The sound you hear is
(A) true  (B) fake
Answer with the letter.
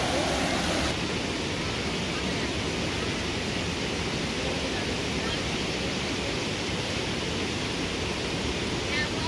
A